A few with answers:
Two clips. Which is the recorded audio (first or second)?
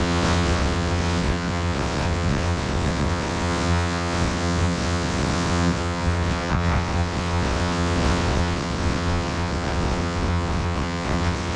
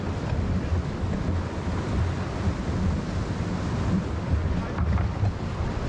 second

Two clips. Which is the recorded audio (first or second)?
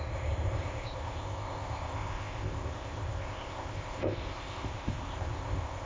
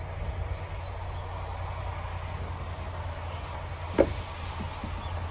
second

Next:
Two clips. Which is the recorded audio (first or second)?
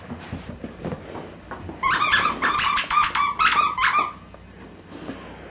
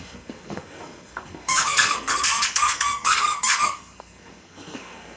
first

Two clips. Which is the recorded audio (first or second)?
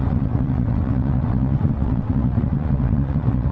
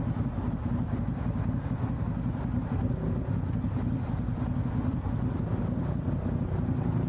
second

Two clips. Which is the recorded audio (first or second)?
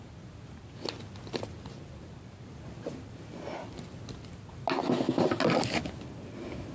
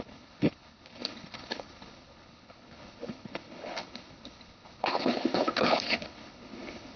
first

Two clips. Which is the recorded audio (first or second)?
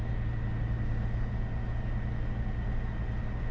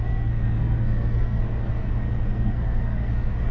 first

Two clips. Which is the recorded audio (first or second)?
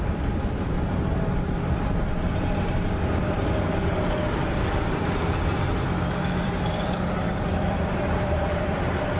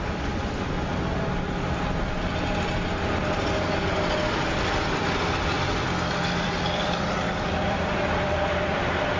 second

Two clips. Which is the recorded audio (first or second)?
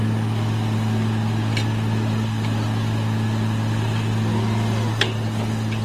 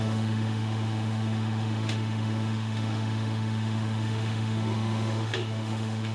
first